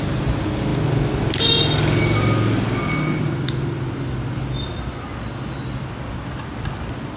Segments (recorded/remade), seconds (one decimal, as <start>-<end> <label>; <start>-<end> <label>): 0.0-7.2 recorded